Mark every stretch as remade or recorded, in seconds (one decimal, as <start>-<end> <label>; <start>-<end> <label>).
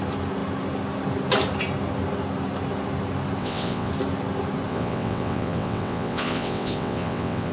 0.0-3.4 recorded; 3.4-3.9 remade; 3.9-4.7 recorded; 4.7-7.5 remade